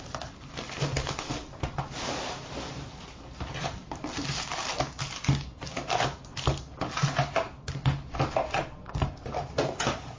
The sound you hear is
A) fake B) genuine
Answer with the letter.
B